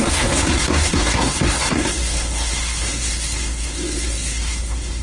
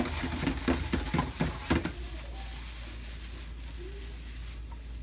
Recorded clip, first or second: second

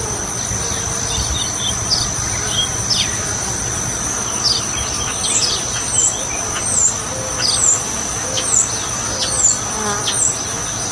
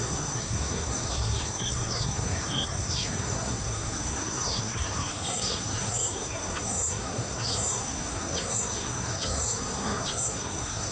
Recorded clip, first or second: first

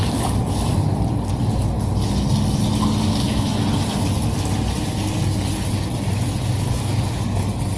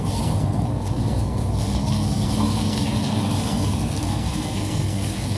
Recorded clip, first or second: first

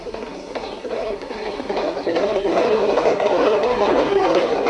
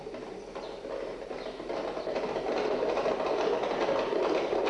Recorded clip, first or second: second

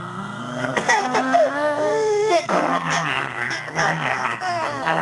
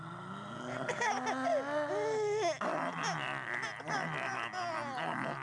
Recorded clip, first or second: second